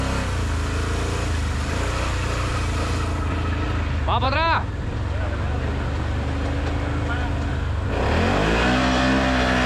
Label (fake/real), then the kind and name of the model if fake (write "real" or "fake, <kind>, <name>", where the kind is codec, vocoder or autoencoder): real